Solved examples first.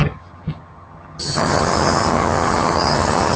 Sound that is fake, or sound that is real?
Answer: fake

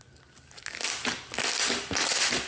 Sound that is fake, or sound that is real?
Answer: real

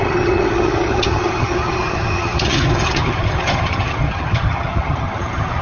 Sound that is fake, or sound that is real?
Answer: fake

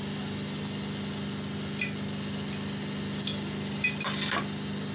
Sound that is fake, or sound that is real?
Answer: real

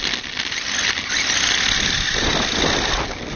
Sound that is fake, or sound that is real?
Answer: real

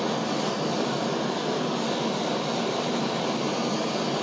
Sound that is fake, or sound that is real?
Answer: real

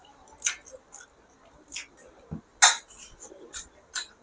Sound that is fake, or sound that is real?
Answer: real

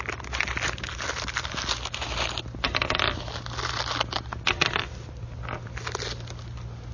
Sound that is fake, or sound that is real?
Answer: real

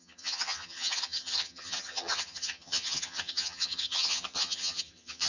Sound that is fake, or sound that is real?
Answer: fake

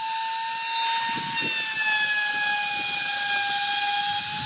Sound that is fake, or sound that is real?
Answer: real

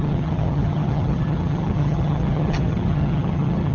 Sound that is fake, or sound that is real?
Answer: fake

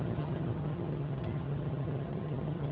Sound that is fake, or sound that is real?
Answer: fake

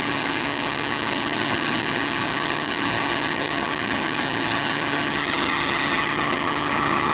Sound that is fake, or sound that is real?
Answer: fake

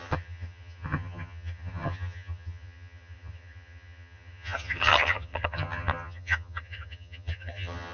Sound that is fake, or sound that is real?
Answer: fake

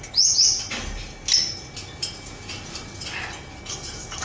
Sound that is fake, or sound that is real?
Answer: real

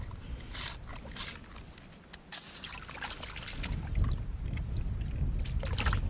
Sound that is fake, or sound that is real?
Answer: real